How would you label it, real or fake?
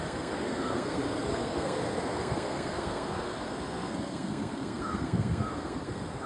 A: fake